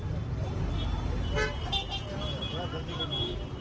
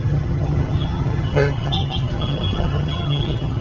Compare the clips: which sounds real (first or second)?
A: first